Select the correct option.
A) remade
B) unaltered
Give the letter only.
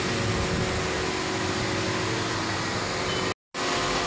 B